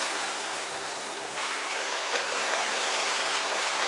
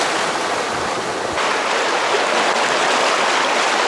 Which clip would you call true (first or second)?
second